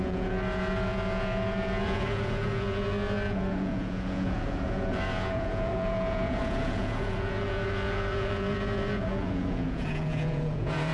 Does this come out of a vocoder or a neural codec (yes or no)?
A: yes